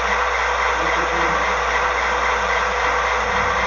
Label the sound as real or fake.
real